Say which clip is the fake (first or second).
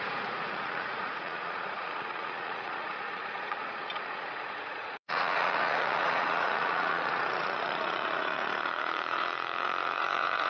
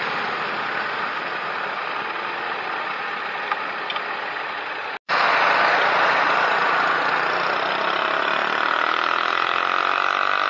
first